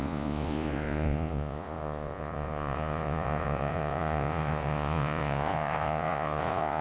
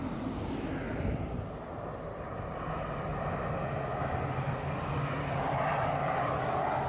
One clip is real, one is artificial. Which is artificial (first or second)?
first